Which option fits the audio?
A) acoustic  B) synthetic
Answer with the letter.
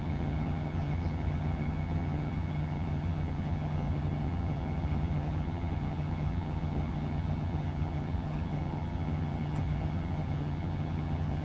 B